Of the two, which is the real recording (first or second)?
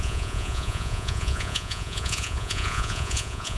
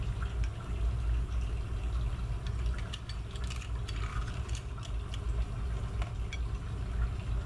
second